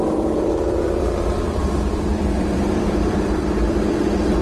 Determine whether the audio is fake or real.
fake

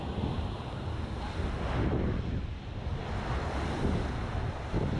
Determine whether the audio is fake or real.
real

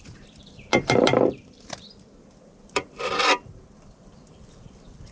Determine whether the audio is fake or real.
fake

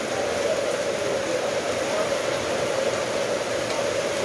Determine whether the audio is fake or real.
real